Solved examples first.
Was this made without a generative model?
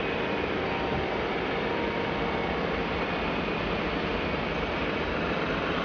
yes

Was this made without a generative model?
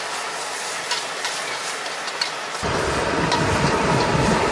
yes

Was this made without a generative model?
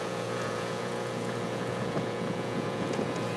no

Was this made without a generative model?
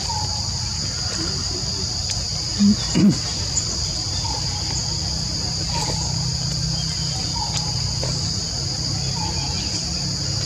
yes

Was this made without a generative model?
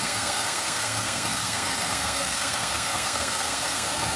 no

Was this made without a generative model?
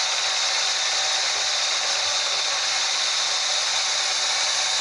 yes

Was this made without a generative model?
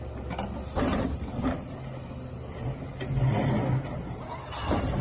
yes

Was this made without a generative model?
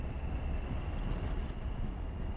yes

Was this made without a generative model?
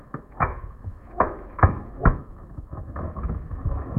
no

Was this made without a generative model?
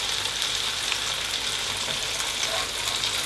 no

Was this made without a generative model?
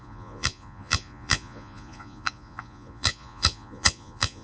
no